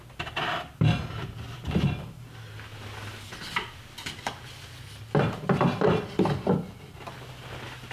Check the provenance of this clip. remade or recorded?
recorded